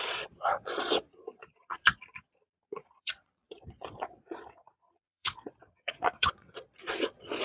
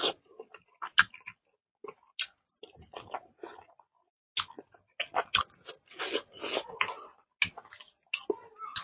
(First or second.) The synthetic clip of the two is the first